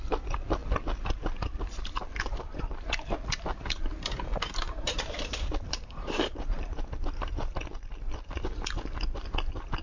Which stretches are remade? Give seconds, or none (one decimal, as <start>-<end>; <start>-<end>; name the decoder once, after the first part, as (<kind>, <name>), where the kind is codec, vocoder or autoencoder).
4.3-6.7 (vocoder, BigVGAN v2)